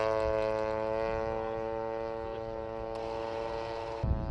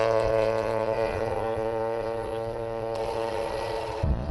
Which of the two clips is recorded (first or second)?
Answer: first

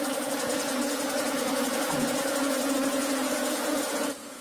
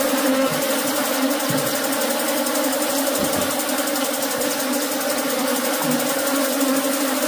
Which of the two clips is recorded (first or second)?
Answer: second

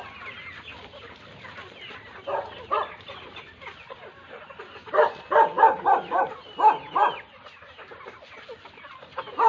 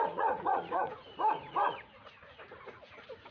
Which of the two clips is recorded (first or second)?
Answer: first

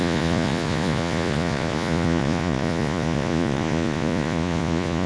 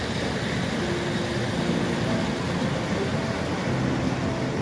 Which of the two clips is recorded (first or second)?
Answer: second